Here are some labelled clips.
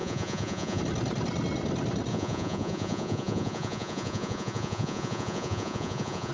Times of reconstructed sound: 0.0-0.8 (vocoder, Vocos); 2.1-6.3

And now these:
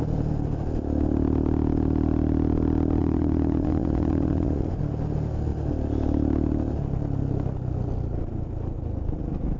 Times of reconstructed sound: 3.0-4.8 (vocoder, Vocos)

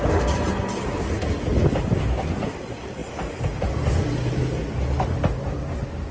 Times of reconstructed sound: none